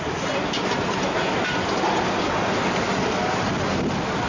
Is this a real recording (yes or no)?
yes